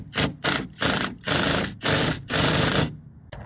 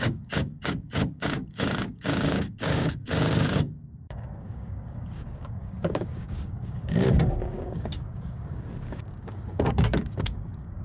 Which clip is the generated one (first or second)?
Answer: second